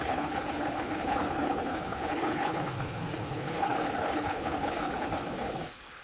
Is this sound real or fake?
fake